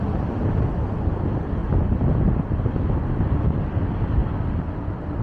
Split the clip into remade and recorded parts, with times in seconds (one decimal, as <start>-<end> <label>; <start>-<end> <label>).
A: 0.0-5.2 recorded